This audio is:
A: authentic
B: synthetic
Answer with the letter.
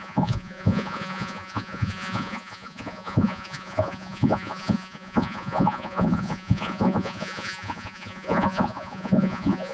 B